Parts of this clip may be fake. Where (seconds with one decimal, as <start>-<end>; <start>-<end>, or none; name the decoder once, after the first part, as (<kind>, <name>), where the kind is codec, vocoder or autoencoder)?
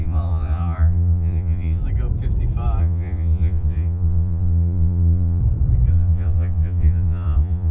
0.0-1.8 (vocoder, Vocos); 2.8-5.4; 5.9-7.7